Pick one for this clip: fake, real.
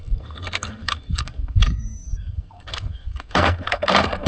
fake